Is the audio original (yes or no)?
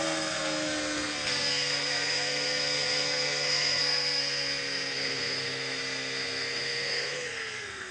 no